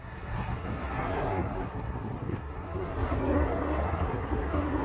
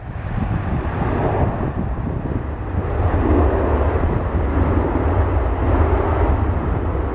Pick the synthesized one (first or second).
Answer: first